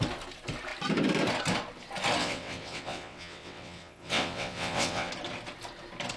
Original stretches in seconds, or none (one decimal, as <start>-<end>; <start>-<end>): 0.0-2.2; 5.1-6.2